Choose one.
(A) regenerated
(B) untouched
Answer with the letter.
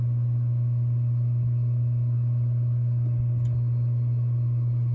B